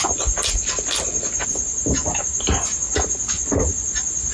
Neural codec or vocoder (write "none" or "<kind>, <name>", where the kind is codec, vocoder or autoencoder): none